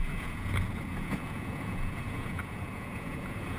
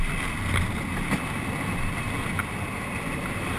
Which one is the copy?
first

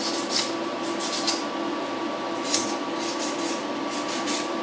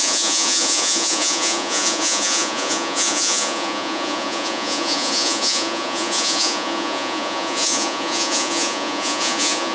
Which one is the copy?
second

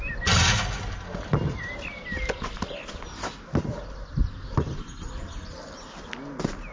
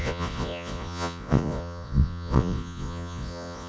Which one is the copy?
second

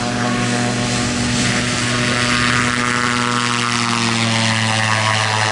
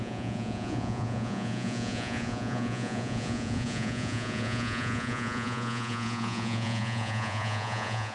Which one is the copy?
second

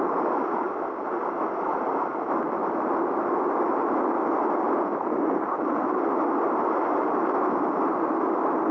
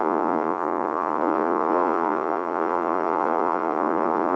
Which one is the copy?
second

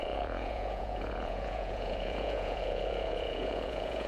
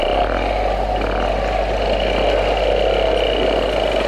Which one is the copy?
first